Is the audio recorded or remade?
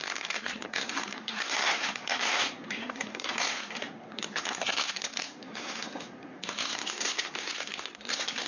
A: remade